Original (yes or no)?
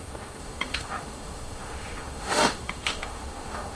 no